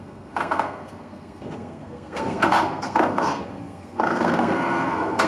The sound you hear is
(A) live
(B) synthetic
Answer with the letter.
B